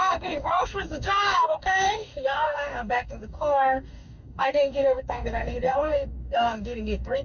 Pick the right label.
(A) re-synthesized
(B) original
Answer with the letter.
A